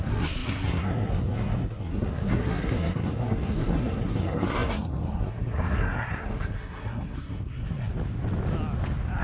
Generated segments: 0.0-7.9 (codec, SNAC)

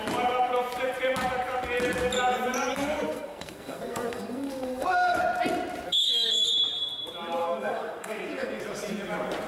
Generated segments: 2.7-5.2 (codec, SNAC); 5.9-6.5; 7.4-8.6